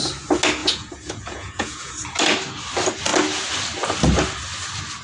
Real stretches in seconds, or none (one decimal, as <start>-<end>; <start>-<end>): 0.0-0.6; 1.9-5.0